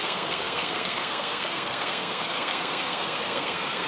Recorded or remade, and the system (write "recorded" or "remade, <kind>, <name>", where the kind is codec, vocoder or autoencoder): remade, codec, SNAC